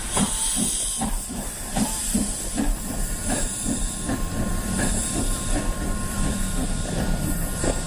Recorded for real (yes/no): no